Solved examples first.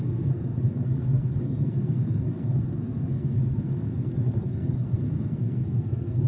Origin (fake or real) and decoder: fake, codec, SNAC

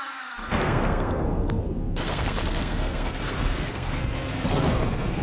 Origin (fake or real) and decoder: fake, codec, SNAC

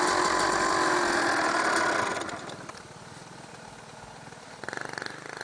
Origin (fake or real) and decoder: real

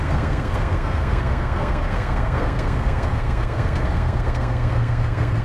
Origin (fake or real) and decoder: fake, codec, SNAC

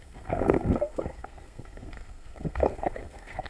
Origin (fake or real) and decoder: fake, codec, SNAC